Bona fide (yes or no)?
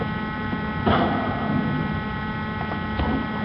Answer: yes